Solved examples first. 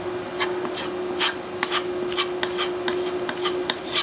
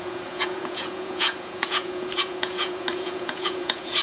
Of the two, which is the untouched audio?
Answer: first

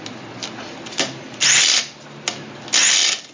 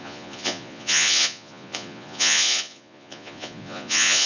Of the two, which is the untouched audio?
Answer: first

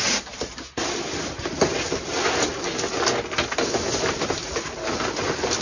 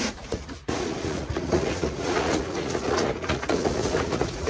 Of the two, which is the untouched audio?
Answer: first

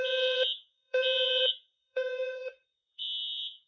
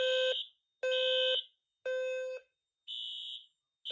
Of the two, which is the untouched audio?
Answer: second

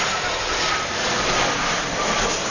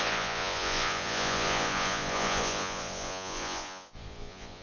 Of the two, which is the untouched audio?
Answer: first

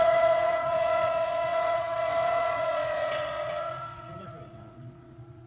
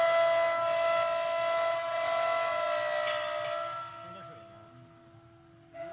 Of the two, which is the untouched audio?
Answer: second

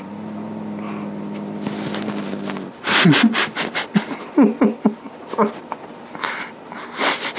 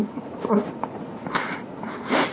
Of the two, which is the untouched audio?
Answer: first